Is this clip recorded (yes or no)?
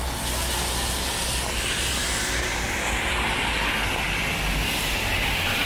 yes